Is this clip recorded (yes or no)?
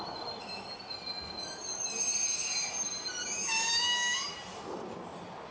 yes